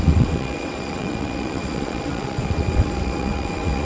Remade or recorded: remade